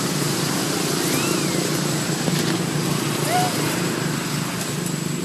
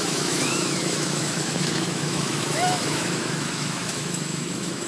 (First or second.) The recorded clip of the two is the first